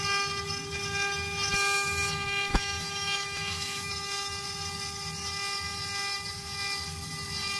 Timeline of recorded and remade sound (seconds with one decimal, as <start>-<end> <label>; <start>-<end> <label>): 0.0-2.5 recorded; 2.5-3.9 remade; 3.9-7.6 recorded